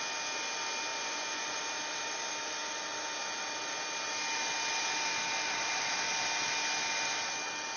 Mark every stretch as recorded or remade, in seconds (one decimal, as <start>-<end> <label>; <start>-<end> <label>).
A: 0.0-0.9 recorded; 0.9-1.6 remade; 1.6-7.8 recorded